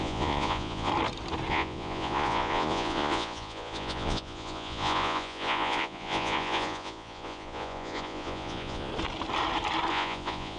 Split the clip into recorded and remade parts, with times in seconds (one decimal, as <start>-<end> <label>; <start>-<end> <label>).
0.0-0.9 remade; 0.9-1.5 recorded; 1.5-8.9 remade; 8.9-9.9 recorded; 9.9-10.6 remade